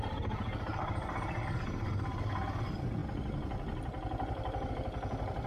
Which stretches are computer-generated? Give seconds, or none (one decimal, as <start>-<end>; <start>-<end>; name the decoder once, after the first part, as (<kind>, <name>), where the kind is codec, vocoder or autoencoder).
none